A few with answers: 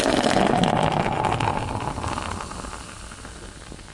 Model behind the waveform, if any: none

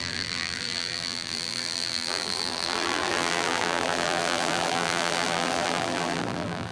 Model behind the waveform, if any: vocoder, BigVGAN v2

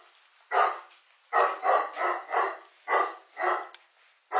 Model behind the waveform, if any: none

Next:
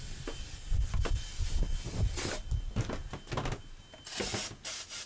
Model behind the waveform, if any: none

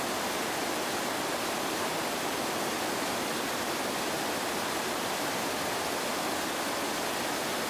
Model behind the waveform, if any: none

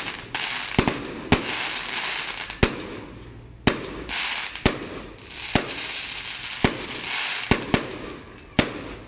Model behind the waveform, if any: none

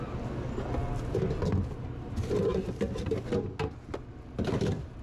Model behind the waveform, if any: none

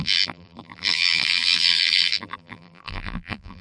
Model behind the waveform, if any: vocoder, BigVGAN v2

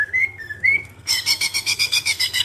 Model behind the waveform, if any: codec, SNAC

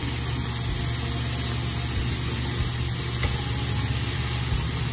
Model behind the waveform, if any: none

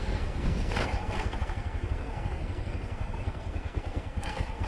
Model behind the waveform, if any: codec, SNAC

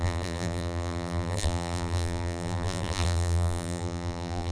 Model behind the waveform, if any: vocoder, BigVGAN v2